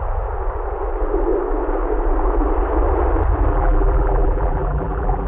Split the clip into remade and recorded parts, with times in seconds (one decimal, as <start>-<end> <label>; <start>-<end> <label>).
0.0-3.5 recorded; 3.5-5.3 remade